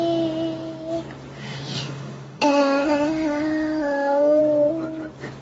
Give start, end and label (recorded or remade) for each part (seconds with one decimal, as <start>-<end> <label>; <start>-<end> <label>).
0.0-1.4 recorded; 1.4-4.4 remade; 4.4-5.4 recorded